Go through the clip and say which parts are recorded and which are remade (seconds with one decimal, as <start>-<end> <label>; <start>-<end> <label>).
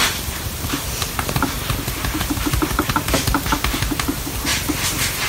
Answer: 0.0-4.5 remade; 4.5-5.3 recorded